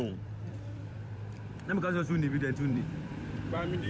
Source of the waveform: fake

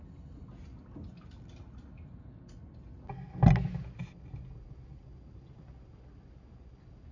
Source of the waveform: real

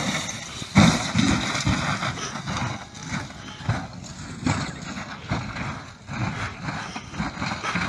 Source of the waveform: real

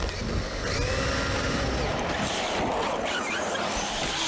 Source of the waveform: real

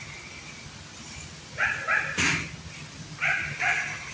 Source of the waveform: real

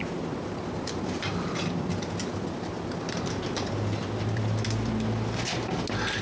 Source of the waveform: real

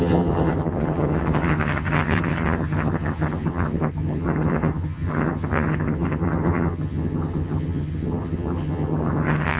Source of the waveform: fake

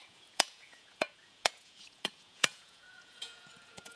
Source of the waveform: fake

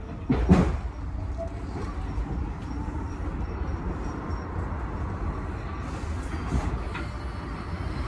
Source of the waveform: real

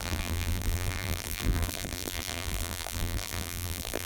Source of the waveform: fake